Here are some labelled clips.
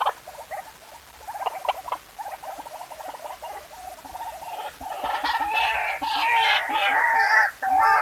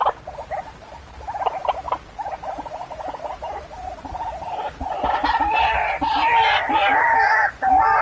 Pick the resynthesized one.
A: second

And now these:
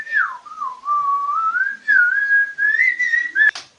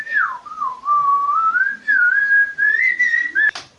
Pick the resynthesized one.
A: second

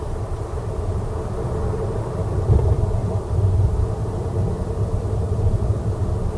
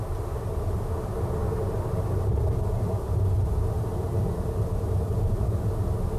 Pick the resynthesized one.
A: first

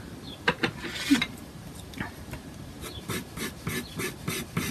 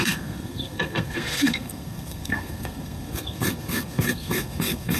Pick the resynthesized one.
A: second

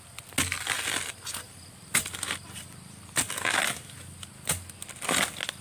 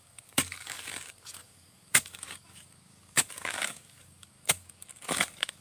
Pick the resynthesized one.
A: second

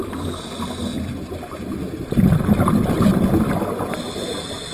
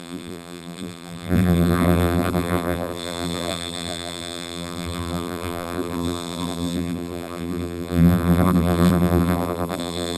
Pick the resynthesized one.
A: second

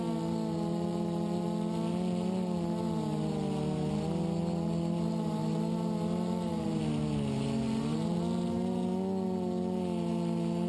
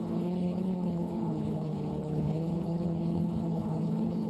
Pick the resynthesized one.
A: second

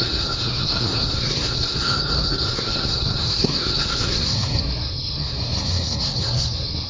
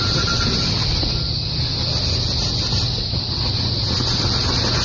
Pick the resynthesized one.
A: first